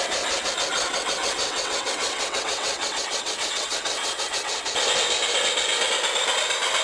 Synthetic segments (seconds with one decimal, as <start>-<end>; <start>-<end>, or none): 0.7-4.5